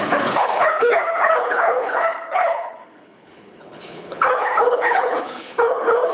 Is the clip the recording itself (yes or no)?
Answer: no